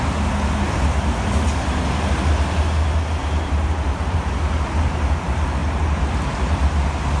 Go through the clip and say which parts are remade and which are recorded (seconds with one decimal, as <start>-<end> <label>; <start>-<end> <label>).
0.0-3.2 recorded; 3.2-4.3 remade; 4.3-7.2 recorded